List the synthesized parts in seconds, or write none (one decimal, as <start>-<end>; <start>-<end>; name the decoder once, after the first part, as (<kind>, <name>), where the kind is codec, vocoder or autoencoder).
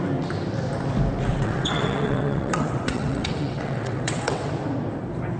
1.3-4.5 (vocoder, WaveNeXt)